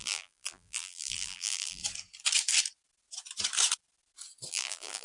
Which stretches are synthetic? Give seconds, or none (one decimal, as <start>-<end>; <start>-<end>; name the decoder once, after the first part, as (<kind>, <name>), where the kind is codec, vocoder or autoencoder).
0.0-1.8 (vocoder, BigVGAN v2); 4.5-5.0